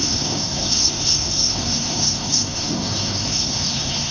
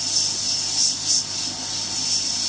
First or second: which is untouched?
second